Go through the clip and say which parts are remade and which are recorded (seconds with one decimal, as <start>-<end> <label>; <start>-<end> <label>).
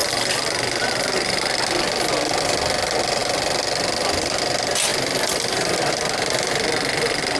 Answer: 0.0-3.2 recorded; 3.2-4.4 remade; 4.4-7.4 recorded